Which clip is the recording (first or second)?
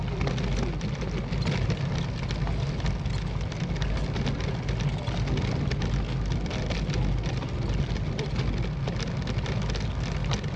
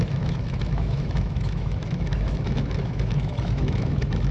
first